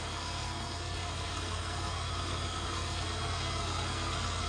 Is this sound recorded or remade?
remade